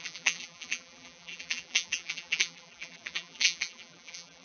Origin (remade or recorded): remade